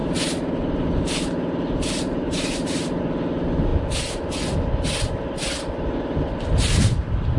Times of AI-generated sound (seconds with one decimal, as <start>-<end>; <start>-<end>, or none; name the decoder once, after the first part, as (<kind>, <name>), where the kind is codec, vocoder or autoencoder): 0.0-3.0 (vocoder, BigVGAN v2)